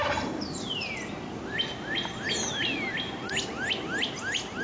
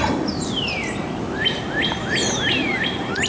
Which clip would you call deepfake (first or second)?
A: second